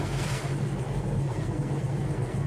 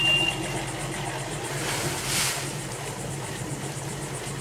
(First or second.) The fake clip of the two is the first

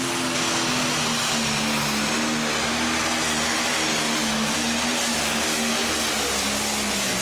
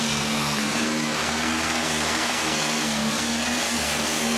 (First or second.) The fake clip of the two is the second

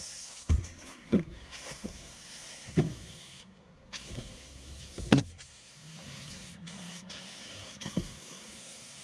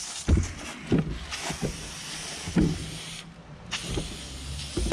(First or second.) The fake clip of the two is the first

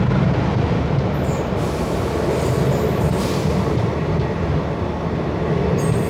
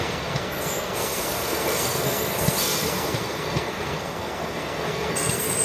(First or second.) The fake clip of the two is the second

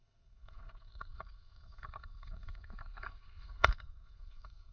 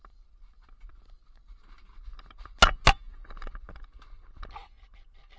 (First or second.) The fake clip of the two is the first